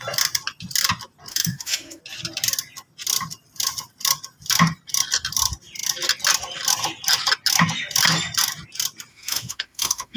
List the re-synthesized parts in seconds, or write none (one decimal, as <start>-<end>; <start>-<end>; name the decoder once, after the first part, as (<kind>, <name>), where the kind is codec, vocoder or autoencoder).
1.3-2.0 (autoencoder, DAC-VAE); 9.1-10.2